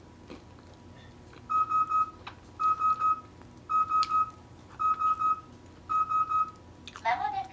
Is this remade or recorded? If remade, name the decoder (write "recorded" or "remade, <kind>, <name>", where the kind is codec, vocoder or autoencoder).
recorded